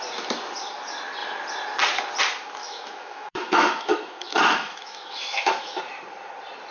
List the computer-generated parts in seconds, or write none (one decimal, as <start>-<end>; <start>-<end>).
2.6-5.8

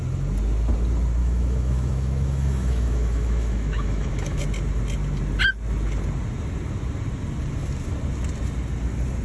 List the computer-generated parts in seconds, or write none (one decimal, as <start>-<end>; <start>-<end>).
1.2-4.4

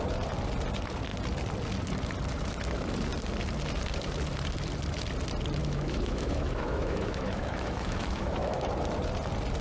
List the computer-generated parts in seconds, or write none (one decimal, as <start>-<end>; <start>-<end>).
5.6-8.7

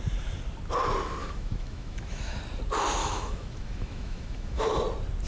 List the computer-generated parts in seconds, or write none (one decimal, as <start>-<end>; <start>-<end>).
1.2-2.4; 3.0-4.6

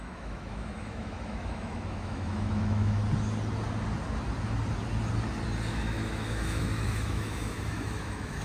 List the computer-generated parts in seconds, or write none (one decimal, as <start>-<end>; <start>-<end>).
0.0-3.0; 5.7-8.4